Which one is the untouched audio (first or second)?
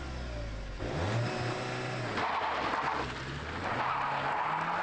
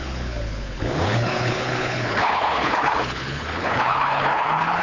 first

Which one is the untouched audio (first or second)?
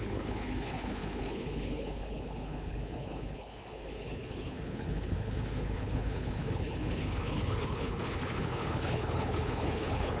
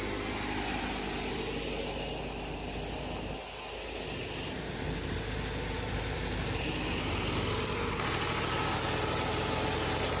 second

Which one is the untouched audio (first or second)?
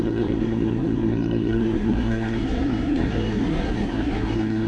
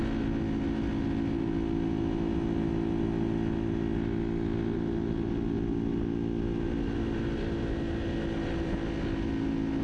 second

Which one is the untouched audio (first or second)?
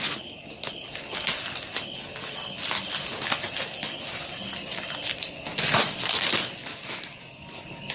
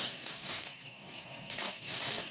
first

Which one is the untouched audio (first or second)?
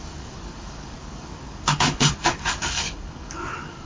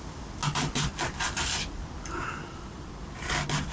second